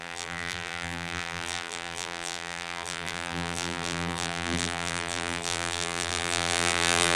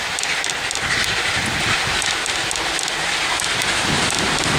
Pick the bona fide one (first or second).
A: second